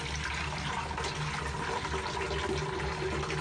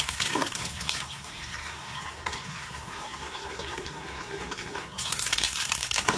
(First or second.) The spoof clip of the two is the second